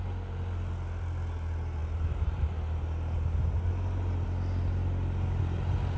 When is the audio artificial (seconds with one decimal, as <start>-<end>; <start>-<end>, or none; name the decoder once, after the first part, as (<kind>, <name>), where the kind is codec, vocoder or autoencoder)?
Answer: none